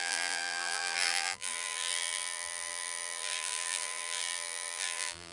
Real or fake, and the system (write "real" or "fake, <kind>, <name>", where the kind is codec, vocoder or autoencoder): fake, vocoder, BigVGAN v2